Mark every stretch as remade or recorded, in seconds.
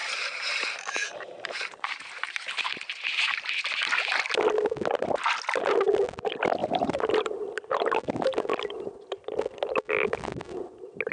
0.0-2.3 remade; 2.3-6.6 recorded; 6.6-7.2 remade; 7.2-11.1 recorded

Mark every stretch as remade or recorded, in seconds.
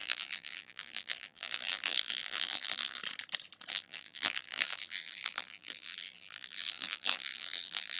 0.0-3.0 remade; 3.0-3.7 recorded; 3.7-8.0 remade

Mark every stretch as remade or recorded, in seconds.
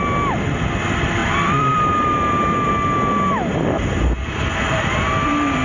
0.0-1.2 recorded; 1.2-2.7 remade; 2.7-5.6 recorded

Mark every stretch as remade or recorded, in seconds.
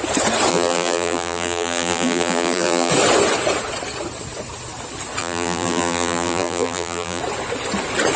0.0-0.5 recorded; 0.5-2.9 remade; 2.9-5.2 recorded; 5.2-7.2 remade; 7.2-8.2 recorded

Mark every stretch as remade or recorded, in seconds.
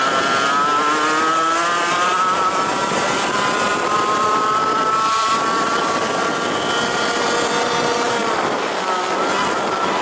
0.0-1.6 recorded; 1.6-3.3 remade; 3.3-3.7 recorded; 3.7-6.3 remade; 6.3-8.2 recorded; 8.2-8.9 remade; 8.9-10.0 recorded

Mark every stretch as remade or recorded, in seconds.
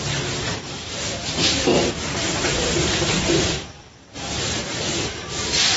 0.0-5.8 remade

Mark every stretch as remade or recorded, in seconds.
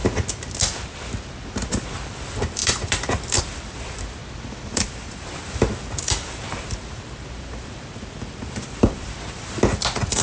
0.0-1.7 recorded; 1.7-4.2 remade; 4.2-4.7 recorded; 4.7-10.2 remade